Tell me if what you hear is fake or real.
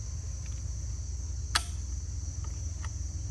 real